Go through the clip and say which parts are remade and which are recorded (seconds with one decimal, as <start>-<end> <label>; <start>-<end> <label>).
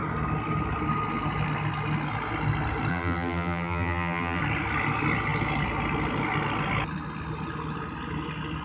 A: 0.0-2.9 recorded; 2.9-4.4 remade; 4.4-8.6 recorded